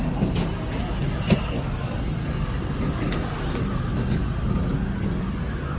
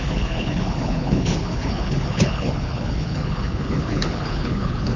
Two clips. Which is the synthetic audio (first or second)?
second